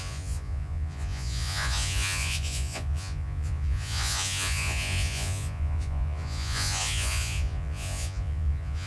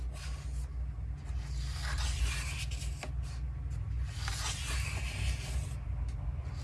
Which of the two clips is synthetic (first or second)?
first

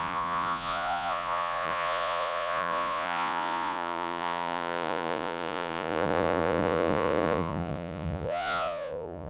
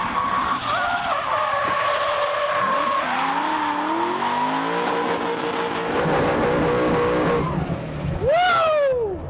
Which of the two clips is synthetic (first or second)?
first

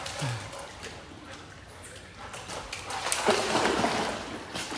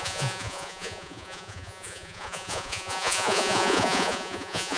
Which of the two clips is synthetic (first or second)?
second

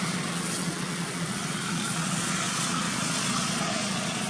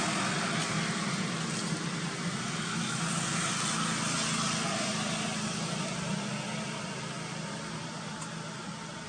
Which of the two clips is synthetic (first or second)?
first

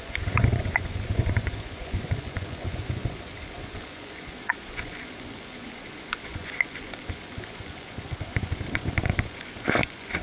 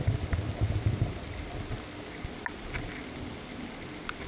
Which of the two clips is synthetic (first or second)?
first